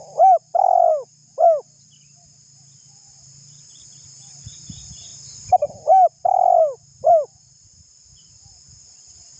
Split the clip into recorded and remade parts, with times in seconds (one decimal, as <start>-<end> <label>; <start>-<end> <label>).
0.0-9.4 recorded